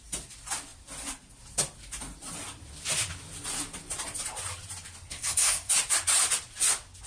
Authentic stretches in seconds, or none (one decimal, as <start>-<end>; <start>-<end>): 0.0-5.1; 5.7-7.1